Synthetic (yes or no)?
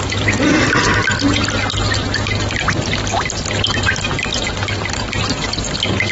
no